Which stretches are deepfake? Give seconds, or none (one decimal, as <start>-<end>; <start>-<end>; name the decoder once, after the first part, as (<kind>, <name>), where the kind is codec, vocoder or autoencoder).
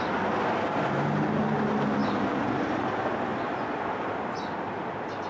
none